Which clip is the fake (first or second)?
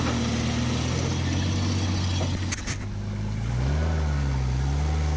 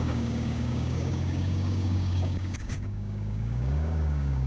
second